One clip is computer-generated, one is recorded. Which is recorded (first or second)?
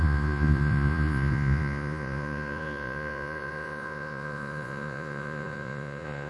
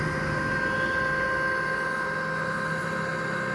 second